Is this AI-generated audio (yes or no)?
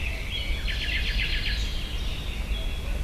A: no